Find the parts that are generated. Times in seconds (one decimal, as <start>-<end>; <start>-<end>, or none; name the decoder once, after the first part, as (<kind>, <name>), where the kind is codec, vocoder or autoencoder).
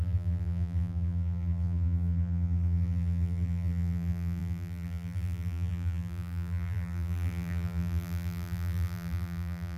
0.0-9.8 (vocoder, BigVGAN v2)